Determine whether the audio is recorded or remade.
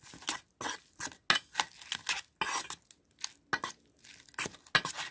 recorded